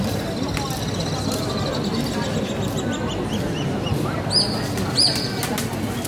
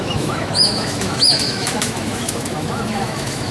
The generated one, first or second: second